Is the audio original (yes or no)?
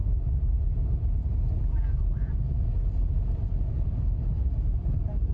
yes